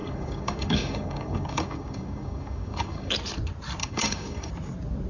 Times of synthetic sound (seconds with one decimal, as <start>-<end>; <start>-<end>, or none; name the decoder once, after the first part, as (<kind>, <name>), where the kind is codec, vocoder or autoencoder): 0.0-3.1 (codec, DAC); 3.8-4.5